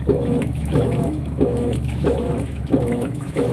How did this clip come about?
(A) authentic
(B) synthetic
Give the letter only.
B